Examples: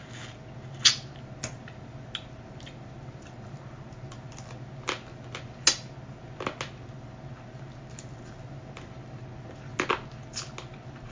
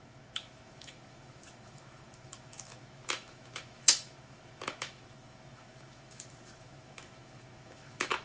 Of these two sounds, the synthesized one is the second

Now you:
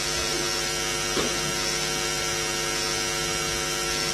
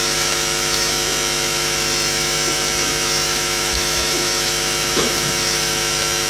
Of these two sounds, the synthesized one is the second